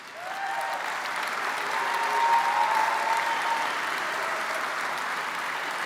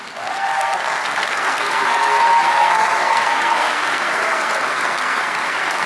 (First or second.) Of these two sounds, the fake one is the second